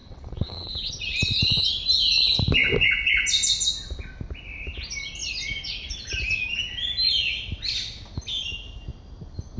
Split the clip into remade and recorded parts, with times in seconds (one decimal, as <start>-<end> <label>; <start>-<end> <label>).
0.0-0.9 remade; 0.9-9.6 recorded